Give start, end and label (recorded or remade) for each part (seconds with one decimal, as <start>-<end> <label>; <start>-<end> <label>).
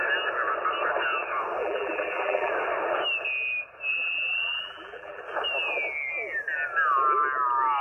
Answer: 0.0-1.6 recorded; 1.6-2.5 remade; 2.5-3.9 recorded; 3.9-5.2 remade; 5.2-7.8 recorded